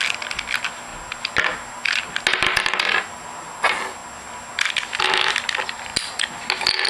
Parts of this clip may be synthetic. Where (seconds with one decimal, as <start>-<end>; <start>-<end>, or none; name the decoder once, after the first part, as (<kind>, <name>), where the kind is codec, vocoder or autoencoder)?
none

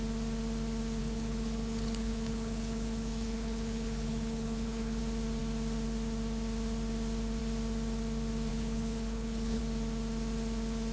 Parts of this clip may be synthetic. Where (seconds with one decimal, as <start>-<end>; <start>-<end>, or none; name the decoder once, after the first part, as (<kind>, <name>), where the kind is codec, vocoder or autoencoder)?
1.0-5.0 (codec, HILCodec); 8.5-9.6

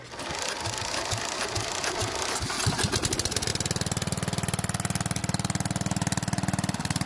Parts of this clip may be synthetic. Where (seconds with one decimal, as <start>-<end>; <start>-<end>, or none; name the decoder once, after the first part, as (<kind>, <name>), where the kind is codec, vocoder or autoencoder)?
none

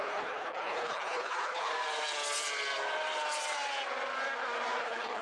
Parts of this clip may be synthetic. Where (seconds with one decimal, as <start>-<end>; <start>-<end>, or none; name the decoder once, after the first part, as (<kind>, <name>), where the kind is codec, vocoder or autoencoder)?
0.0-1.7 (codec, HILCodec); 4.8-5.2

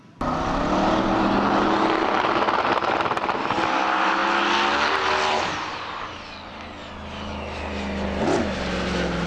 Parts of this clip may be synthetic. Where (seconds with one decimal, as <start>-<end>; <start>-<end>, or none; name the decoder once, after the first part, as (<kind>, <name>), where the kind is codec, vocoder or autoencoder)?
none

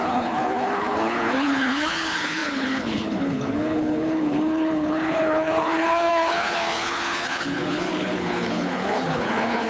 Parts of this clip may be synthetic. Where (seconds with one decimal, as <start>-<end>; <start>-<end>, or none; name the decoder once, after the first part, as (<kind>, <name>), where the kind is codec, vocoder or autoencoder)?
0.0-9.7 (codec, HILCodec)